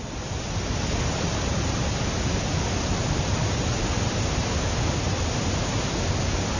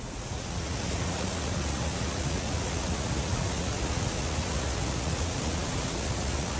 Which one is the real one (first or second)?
first